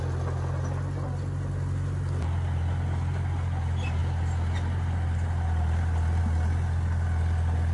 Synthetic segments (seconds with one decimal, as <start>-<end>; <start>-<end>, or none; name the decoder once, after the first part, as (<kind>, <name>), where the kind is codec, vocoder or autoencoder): none

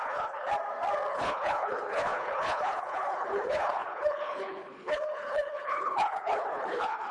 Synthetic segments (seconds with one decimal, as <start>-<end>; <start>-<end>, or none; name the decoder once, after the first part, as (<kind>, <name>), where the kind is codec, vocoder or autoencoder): 0.0-0.5 (codec, HILCodec); 1.1-7.1

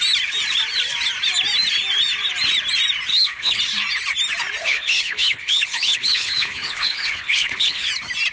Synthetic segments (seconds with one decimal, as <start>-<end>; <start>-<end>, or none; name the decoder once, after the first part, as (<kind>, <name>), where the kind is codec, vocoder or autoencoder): 3.1-3.6 (codec, HILCodec); 4.6-7.9